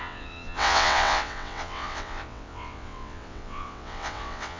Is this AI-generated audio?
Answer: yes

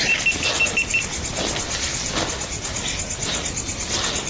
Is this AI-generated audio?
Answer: no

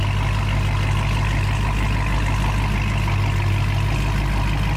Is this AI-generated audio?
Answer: no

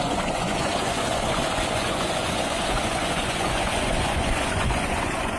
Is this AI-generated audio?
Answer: yes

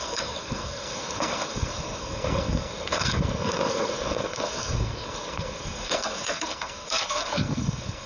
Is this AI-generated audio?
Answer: yes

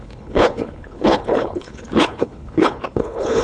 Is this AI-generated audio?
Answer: yes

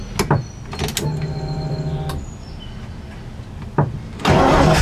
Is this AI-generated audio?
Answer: no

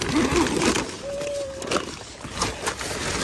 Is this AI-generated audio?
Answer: no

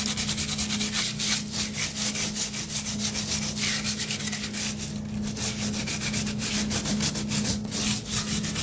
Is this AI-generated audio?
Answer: no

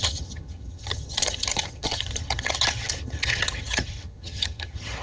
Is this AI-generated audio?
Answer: yes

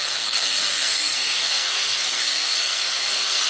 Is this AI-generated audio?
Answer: yes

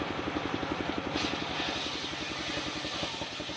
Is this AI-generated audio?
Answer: no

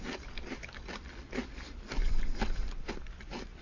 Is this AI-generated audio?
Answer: no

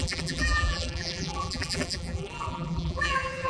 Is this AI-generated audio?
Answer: yes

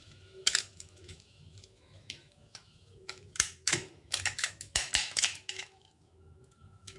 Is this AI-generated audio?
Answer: yes